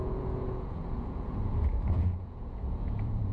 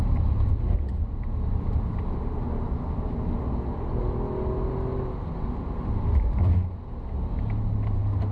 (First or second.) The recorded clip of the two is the second